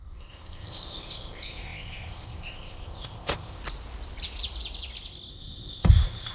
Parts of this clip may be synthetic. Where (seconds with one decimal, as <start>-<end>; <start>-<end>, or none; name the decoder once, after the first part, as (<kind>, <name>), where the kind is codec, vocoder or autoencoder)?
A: 0.0-3.6 (codec, ZipCodec); 5.3-6.3